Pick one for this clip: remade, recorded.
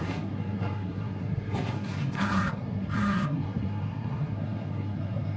remade